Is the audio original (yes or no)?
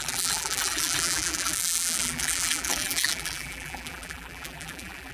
no